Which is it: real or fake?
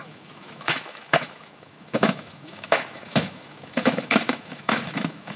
fake